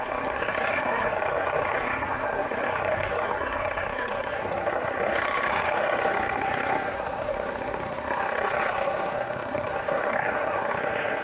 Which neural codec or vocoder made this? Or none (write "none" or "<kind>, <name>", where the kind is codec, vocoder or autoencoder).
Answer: codec, SNAC